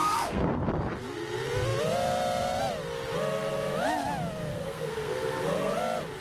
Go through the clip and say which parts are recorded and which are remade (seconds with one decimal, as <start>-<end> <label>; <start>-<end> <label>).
0.0-0.7 remade; 0.7-4.5 recorded; 4.5-5.8 remade; 5.8-6.2 recorded